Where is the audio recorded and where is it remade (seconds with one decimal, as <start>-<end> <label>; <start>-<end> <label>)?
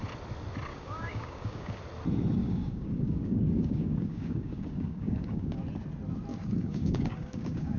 0.0-0.7 recorded; 0.7-1.8 remade; 1.8-2.4 recorded; 2.4-5.6 remade; 5.6-6.3 recorded; 6.3-7.8 remade